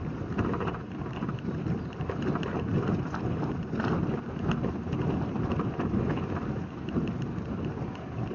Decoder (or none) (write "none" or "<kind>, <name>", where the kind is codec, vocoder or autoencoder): none